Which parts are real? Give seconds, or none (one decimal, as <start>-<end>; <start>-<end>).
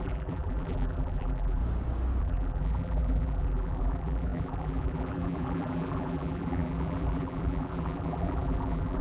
1.6-2.2